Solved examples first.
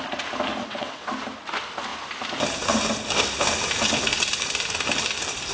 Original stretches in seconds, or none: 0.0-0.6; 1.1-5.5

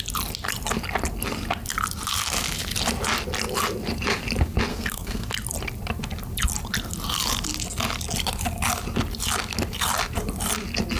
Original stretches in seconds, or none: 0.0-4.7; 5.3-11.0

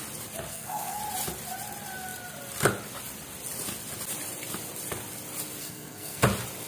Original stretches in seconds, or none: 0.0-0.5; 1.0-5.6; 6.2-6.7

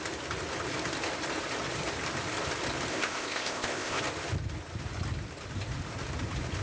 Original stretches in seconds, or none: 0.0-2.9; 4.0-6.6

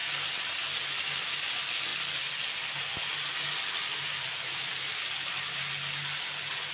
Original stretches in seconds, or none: 0.0-6.7